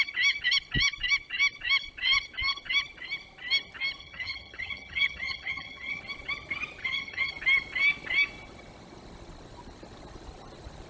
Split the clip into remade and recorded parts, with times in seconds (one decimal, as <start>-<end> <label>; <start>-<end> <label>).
0.0-4.0 recorded; 4.0-6.0 remade; 6.0-6.8 recorded; 6.8-7.3 remade; 7.3-10.9 recorded